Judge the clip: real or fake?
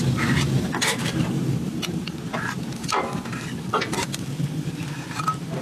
real